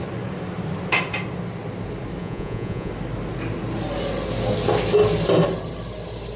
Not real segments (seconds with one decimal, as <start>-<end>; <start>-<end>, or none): 2.2-2.9